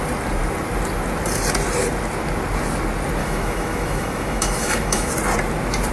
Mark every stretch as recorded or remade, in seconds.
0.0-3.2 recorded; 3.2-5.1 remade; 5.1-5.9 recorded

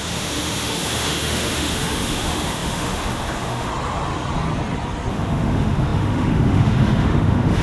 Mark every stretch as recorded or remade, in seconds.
0.0-3.7 remade; 3.7-5.1 recorded; 5.1-7.6 remade

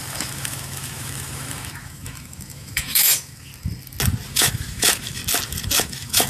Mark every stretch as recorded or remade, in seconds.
0.0-3.5 remade; 3.5-4.3 recorded; 4.3-5.2 remade; 5.2-5.8 recorded; 5.8-6.3 remade

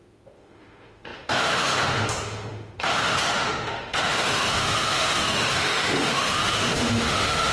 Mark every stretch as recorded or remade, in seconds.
0.0-7.5 remade

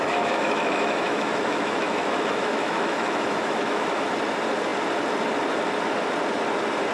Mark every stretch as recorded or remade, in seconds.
0.0-4.1 remade; 4.1-6.9 recorded

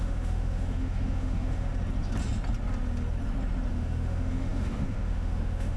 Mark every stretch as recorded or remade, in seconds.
0.0-1.7 remade; 1.7-3.7 recorded; 3.7-5.8 remade